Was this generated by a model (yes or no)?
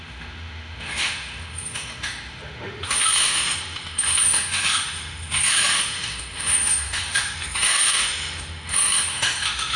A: yes